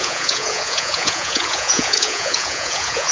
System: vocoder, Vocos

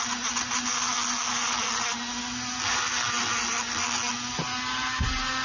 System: none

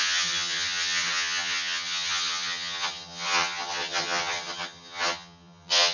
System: vocoder, HiFi-GAN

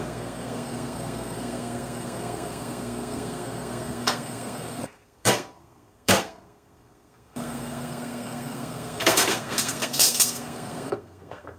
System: codec, SNAC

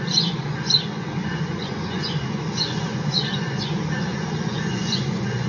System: vocoder, Vocos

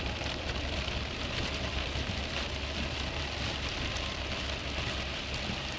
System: vocoder, BigVGAN v2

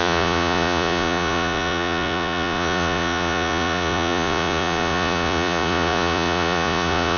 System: vocoder, Vocos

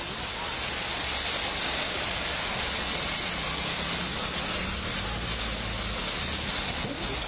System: none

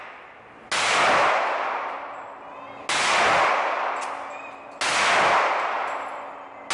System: none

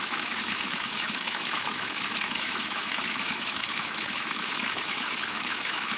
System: autoencoder, DAC-VAE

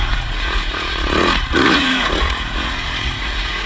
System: vocoder, Vocos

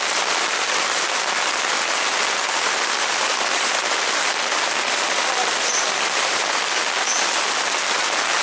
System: none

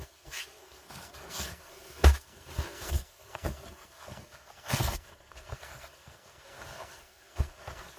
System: codec, SNAC